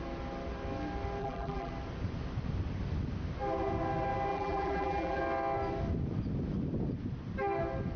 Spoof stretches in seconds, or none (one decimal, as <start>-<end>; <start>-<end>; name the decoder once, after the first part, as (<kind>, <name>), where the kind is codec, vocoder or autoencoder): 1.2-1.7 (vocoder, BigVGAN v2); 4.3-5.2